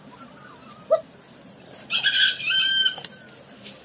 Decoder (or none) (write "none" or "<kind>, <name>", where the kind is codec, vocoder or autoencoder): none